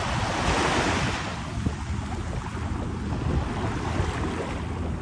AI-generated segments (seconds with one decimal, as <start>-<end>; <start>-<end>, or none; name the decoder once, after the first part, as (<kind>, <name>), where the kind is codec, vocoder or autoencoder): none